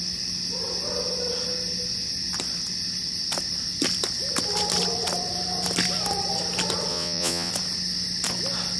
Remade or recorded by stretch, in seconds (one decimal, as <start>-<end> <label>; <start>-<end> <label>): 0.0-6.9 recorded; 6.9-7.5 remade; 7.5-8.8 recorded